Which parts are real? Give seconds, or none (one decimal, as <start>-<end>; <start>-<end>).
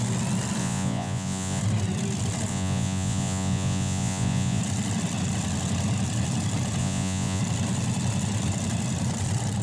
0.0-0.6; 1.6-2.5; 4.6-6.8; 7.4-9.6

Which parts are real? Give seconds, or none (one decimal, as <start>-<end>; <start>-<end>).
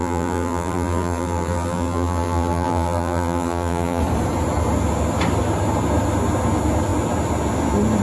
4.0-8.0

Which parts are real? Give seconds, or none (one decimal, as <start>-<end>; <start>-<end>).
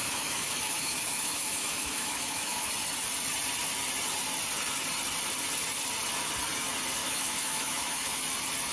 2.7-7.0; 8.2-8.7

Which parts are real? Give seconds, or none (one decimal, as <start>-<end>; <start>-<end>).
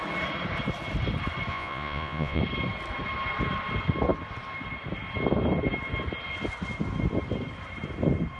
0.0-1.5; 2.4-8.4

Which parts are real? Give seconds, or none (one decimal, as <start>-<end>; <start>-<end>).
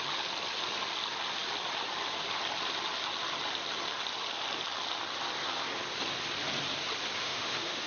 0.0-7.2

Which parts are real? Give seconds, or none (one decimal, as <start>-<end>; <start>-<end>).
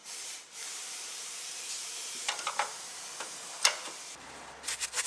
3.0-5.1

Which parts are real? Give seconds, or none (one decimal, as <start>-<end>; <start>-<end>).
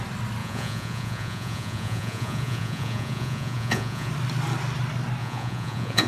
0.0-0.4; 4.1-5.2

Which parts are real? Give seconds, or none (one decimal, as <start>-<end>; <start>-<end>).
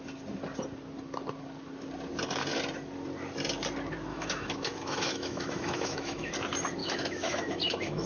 0.0-4.1; 6.3-6.8